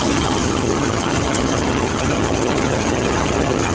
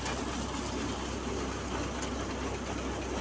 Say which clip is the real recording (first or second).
second